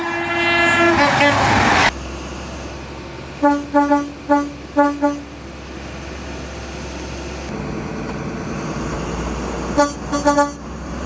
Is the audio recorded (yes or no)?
yes